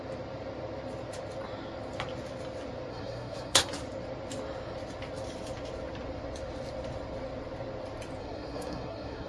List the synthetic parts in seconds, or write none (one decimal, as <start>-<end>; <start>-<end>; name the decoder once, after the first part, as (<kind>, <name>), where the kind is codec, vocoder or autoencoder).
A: 2.9-3.7 (codec, SNAC); 8.2-9.3